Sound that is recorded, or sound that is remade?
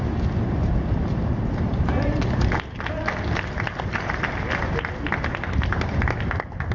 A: recorded